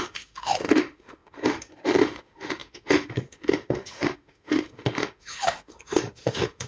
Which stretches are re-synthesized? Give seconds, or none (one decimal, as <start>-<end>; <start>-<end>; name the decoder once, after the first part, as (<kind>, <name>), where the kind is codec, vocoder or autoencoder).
0.0-6.7 (autoencoder, DAC-VAE)